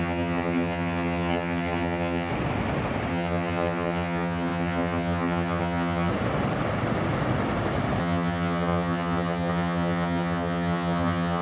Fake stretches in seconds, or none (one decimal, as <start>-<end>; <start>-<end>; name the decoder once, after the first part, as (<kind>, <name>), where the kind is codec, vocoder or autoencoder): 0.0-2.3 (vocoder, HiFi-GAN); 3.1-6.1; 8.0-11.4